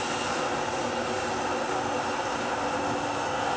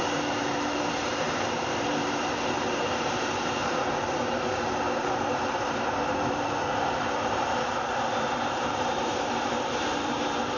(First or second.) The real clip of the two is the first